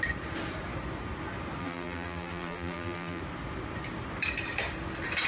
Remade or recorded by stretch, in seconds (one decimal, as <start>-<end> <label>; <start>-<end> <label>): 0.0-1.6 recorded; 1.6-3.2 remade; 3.2-5.3 recorded